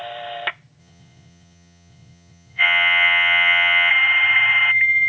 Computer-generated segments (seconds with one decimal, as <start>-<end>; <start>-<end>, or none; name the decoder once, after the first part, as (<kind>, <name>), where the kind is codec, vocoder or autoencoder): 0.8-3.9 (vocoder, Vocos)